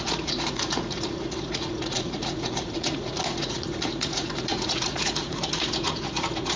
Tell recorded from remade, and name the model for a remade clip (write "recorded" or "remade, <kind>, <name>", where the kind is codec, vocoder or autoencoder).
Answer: remade, vocoder, Vocos